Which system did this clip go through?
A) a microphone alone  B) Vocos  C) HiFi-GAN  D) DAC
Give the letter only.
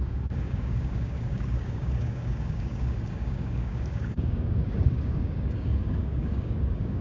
D